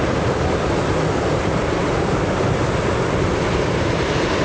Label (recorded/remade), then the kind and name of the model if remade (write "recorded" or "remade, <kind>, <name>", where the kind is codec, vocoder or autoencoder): remade, vocoder, BigVGAN v2